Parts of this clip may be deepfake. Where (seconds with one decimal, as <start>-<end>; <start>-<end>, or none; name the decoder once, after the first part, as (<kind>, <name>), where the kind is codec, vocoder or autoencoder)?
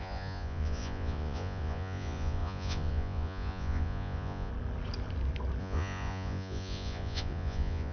0.0-4.5 (vocoder, Vocos); 5.6-7.9